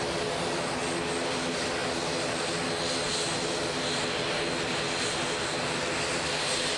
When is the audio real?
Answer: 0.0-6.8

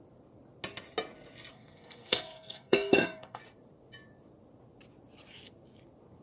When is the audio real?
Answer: 0.0-1.5; 3.4-6.2

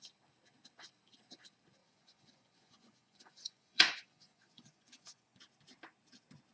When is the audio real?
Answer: 0.0-1.8; 5.4-6.5